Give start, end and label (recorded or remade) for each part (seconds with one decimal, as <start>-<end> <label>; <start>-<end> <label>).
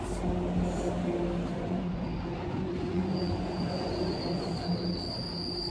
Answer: 0.0-1.5 recorded; 1.5-4.7 remade; 4.7-5.7 recorded